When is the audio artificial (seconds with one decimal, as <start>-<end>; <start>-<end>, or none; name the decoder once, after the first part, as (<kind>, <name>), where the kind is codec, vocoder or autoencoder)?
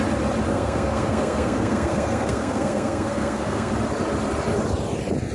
0.5-3.7 (codec, SNAC)